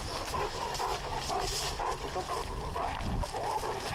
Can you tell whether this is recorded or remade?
recorded